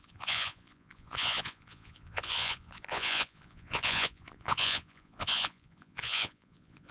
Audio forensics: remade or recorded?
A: remade